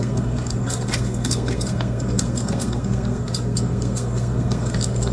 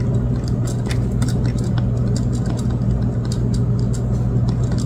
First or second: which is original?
second